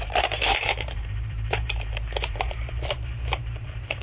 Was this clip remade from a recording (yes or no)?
yes